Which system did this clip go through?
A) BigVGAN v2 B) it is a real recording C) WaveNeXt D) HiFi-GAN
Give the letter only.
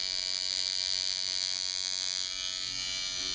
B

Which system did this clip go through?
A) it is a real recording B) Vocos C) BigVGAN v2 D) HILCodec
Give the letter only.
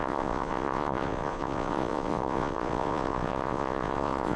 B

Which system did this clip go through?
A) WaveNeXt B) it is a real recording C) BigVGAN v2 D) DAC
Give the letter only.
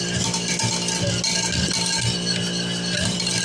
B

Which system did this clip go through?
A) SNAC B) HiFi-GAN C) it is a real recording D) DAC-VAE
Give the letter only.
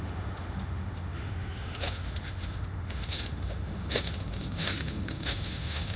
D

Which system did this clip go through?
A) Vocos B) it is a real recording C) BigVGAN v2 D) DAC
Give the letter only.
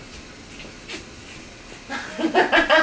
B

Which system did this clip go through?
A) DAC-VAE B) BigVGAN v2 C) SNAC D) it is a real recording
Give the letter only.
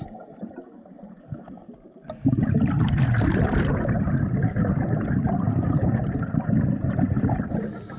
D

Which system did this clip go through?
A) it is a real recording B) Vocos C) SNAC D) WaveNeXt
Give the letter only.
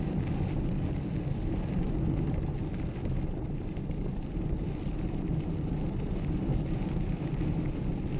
A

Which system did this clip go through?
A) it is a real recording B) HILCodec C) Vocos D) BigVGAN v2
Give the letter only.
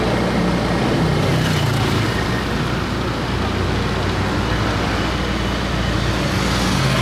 A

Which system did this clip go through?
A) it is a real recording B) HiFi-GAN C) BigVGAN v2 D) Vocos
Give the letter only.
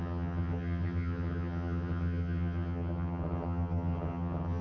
B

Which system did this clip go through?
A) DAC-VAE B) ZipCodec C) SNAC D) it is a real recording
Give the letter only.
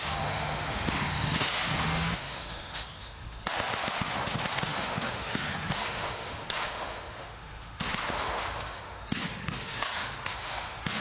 A